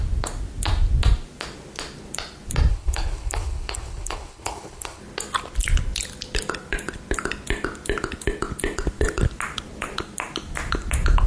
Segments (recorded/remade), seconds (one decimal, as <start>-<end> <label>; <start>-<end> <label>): 0.0-2.7 recorded; 2.7-5.0 remade; 5.0-11.3 recorded